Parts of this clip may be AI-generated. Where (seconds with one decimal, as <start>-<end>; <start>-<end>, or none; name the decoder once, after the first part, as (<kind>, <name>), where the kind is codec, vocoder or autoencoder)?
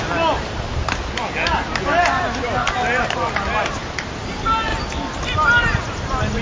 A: none